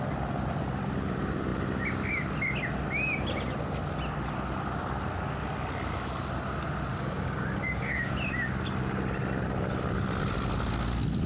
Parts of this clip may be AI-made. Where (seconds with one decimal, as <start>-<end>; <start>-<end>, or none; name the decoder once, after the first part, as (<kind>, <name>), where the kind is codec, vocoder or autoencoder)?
6.9-8.1 (codec, DAC)

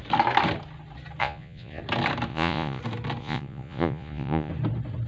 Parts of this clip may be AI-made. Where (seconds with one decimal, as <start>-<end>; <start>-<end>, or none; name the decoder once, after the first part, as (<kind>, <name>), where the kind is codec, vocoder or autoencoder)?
1.2-1.8 (vocoder, Vocos); 2.3-2.8; 3.2-4.5